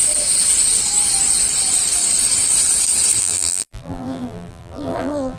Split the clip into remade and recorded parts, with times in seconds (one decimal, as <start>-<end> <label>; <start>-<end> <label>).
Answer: 0.0-3.2 recorded; 3.2-5.4 remade